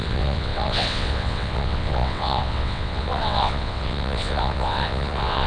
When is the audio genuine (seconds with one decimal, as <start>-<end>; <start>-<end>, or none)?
none

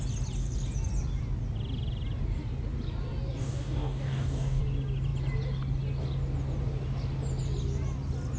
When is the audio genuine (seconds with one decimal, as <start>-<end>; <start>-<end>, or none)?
0.0-3.4; 4.6-8.4

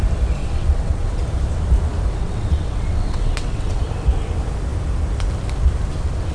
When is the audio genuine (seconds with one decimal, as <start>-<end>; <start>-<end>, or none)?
0.0-0.4; 1.2-2.2; 3.8-6.3

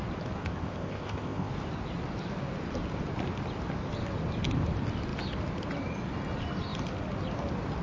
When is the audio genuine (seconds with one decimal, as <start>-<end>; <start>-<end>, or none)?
0.0-0.4; 1.5-7.8

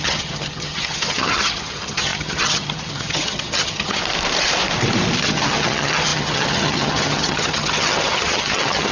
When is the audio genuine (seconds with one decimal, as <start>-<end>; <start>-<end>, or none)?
4.0-5.2

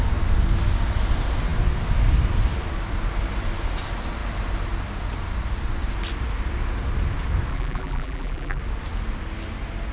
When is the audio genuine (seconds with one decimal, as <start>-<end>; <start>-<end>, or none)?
0.0-7.5; 8.6-9.9

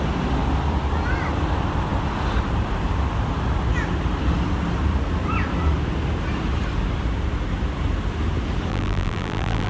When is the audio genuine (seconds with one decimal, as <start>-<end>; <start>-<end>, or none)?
0.0-8.7

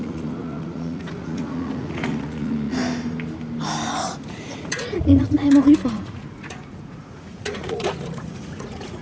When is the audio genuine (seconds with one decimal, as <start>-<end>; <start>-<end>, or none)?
2.8-4.3